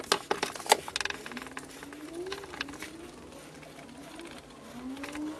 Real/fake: real